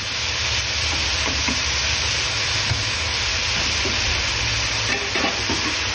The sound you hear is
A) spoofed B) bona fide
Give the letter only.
B